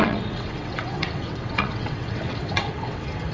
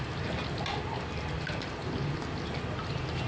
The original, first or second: second